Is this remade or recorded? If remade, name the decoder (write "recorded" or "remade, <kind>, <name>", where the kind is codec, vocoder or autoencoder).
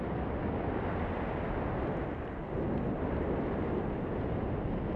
recorded